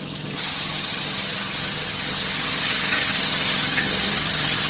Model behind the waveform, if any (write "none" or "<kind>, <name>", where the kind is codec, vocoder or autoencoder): vocoder, HiFi-GAN